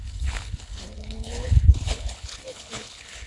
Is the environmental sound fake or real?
fake